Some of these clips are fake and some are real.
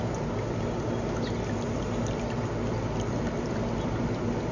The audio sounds real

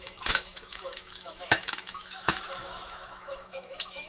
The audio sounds fake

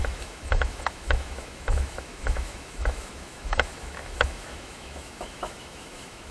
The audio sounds fake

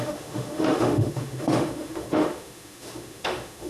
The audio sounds fake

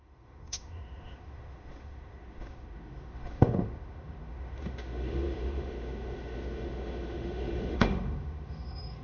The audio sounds fake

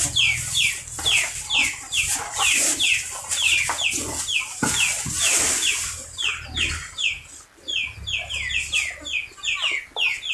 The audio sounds real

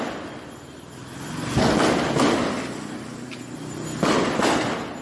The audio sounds real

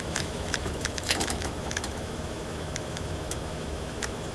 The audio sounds fake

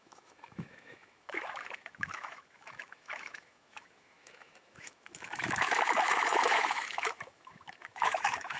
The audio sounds fake